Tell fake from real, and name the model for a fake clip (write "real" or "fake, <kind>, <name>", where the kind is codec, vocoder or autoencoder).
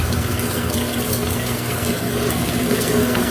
fake, codec, SNAC